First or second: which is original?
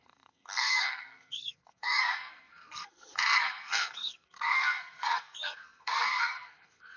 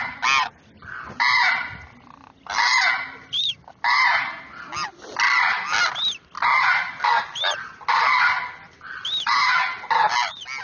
second